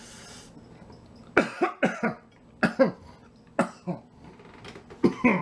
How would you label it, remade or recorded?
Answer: recorded